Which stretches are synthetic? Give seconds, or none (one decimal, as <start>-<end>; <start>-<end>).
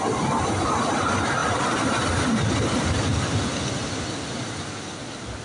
none